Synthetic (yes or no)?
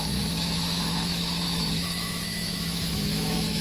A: yes